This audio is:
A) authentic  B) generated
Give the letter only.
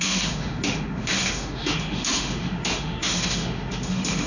B